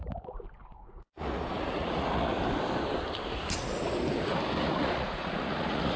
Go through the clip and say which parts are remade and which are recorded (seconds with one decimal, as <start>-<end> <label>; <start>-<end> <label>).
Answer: 0.0-0.6 recorded; 0.6-2.4 remade; 2.4-4.6 recorded; 4.6-6.0 remade